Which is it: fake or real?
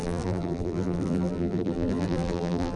fake